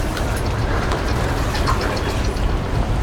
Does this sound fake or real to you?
fake